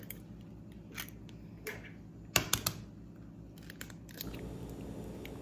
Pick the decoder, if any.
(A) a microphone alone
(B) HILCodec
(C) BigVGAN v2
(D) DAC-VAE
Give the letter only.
A